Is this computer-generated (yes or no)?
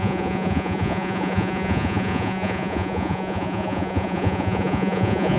yes